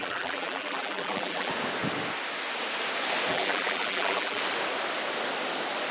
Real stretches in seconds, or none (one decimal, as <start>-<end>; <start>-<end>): 1.5-3.3; 4.4-5.9